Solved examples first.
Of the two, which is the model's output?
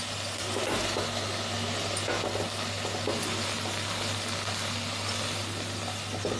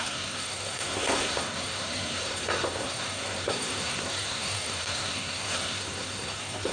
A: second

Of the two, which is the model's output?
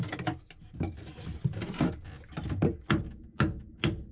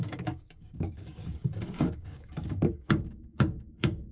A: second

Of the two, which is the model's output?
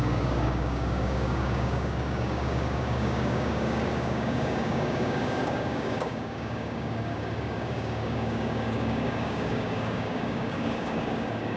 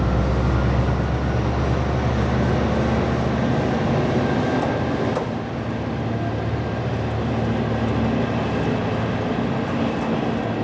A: first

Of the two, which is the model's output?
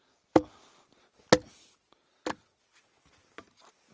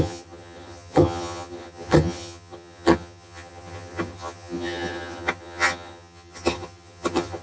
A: second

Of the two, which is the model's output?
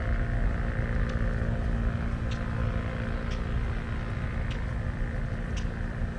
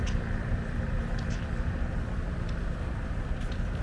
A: second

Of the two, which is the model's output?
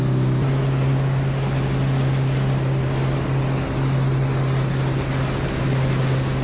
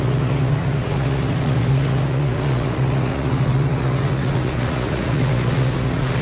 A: second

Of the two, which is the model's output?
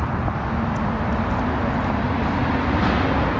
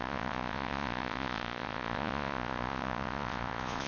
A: second